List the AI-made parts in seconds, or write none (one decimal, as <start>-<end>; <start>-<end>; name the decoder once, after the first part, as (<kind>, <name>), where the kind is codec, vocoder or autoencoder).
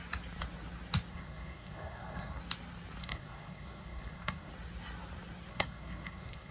1.1-2.4 (codec, SNAC); 3.0-4.5; 5.5-6.5